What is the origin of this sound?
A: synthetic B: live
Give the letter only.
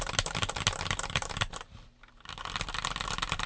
B